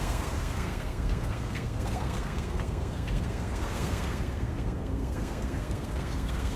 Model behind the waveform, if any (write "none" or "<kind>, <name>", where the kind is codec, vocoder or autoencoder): codec, SNAC